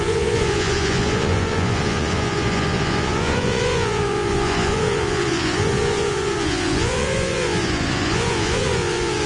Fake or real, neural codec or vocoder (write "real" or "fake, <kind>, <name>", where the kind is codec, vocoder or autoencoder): fake, vocoder, Vocos